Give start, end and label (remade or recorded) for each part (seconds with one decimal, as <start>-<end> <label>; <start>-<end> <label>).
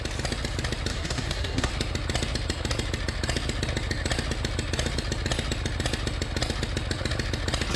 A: 0.0-0.9 recorded; 0.9-1.7 remade; 1.7-7.8 recorded